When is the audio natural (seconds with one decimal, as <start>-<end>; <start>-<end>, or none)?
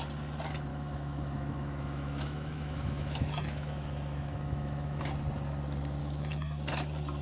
0.0-0.7; 5.0-6.0; 6.7-7.2